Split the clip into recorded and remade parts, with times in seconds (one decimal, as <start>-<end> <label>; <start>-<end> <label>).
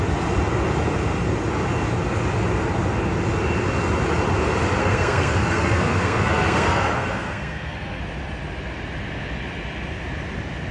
0.0-4.8 recorded; 4.8-8.0 remade; 8.0-10.7 recorded